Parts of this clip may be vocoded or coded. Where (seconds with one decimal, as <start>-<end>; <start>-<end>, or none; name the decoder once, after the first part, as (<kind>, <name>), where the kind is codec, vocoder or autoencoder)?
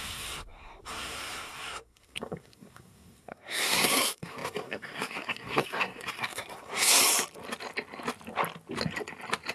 0.0-7.0 (codec, SNAC)